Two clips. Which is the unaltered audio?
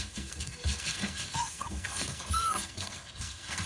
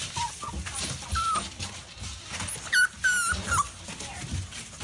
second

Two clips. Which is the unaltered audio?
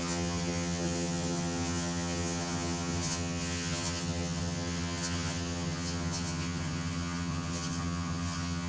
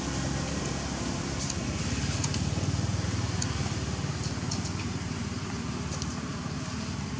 second